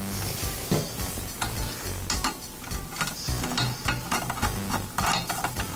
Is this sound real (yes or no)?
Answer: yes